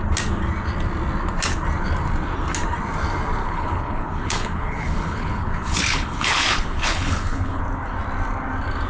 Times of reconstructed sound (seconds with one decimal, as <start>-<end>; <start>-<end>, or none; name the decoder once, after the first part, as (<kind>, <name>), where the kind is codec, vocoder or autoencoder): 3.4-7.6 (codec, HILCodec)